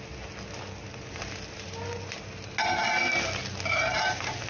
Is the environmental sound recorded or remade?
recorded